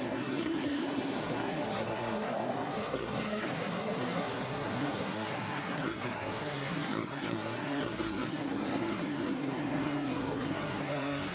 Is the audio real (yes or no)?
no